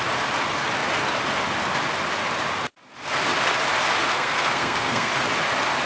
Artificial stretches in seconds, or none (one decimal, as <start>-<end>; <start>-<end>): 4.1-5.1